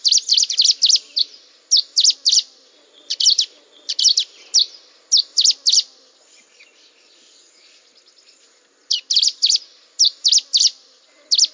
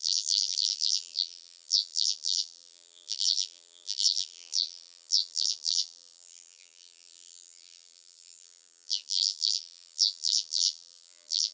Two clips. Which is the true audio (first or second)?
first